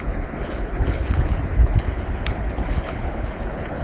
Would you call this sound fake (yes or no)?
yes